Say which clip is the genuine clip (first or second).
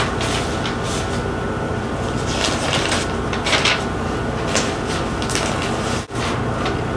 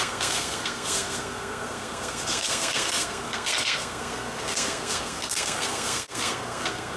first